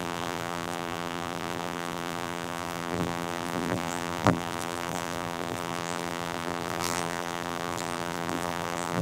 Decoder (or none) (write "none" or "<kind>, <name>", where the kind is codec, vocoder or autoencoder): vocoder, BigVGAN v2